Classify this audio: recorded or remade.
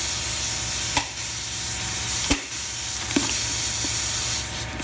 recorded